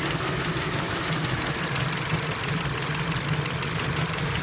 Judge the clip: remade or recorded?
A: recorded